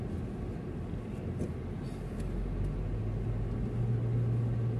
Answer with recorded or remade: recorded